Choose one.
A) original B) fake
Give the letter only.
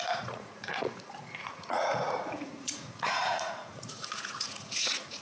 B